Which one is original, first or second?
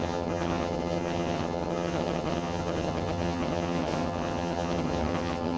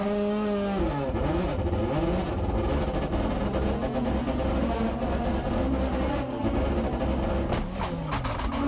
second